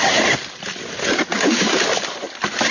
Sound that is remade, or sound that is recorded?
recorded